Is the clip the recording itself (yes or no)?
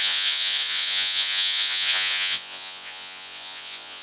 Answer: no